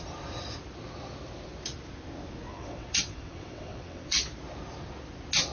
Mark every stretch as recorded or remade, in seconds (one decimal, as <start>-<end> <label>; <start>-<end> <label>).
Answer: 0.0-2.5 recorded; 2.5-4.3 remade; 4.3-5.5 recorded

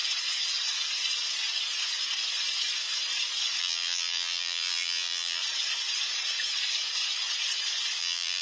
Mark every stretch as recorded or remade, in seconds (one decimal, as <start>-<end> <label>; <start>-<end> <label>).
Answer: 0.0-3.6 recorded; 3.6-5.4 remade; 5.4-8.0 recorded; 8.0-8.4 remade

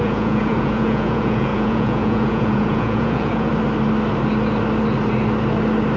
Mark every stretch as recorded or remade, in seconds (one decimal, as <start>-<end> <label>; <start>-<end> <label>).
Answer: 0.0-3.5 remade; 3.5-6.0 recorded

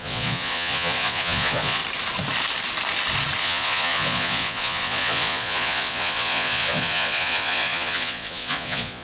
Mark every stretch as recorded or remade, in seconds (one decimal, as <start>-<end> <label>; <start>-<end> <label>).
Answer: 0.0-1.8 remade; 1.8-3.4 recorded; 3.4-9.0 remade

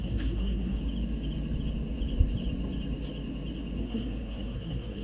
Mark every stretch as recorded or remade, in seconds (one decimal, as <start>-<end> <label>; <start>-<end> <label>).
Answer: 0.0-0.8 remade; 0.8-3.8 recorded; 3.8-5.0 remade